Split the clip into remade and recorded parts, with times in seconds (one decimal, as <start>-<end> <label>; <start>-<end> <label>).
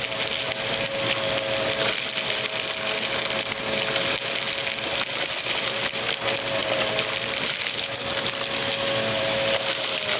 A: 0.0-10.2 recorded